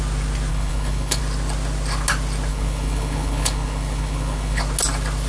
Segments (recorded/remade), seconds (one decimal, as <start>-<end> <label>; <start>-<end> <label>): 0.0-0.5 recorded; 0.5-1.2 remade; 1.2-2.5 recorded; 2.5-4.6 remade; 4.6-5.3 recorded